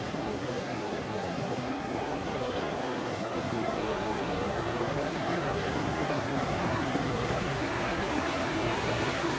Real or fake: fake